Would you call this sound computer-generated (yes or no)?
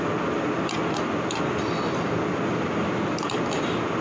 no